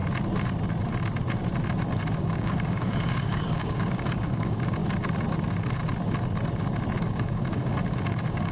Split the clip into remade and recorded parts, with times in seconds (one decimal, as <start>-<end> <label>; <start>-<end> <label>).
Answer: 0.0-2.2 recorded; 2.2-4.8 remade; 4.8-7.0 recorded; 7.0-8.5 remade